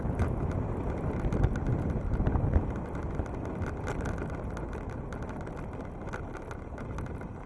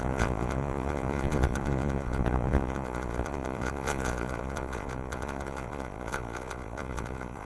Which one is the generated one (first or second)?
second